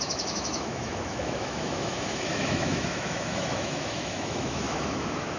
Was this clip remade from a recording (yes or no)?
yes